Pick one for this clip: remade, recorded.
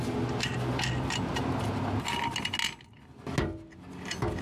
recorded